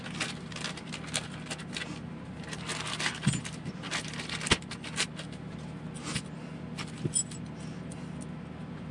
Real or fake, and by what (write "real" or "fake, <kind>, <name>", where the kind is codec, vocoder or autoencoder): real